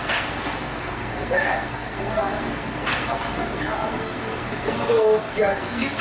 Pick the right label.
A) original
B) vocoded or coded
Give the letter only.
B